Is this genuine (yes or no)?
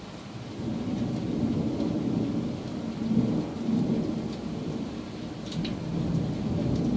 yes